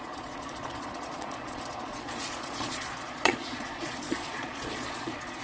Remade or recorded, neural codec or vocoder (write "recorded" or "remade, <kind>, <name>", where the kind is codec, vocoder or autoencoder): remade, vocoder, Vocos